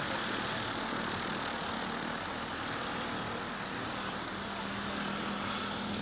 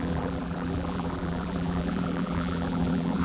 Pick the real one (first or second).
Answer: first